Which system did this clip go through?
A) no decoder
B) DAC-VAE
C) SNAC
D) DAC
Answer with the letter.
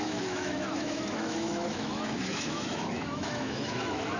B